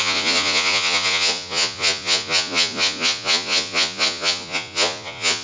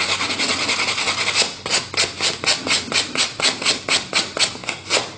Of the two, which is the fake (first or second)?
first